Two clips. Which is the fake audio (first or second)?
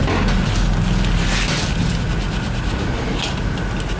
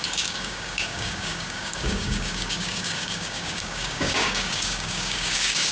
second